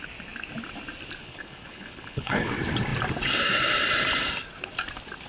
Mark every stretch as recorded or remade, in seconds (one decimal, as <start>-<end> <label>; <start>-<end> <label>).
0.0-1.2 recorded; 1.2-2.5 remade; 2.5-5.3 recorded